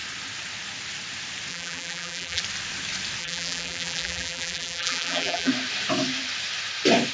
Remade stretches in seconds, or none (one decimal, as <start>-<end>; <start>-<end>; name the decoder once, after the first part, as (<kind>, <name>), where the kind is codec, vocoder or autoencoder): 1.5-2.4 (vocoder, BigVGAN v2); 3.2-5.5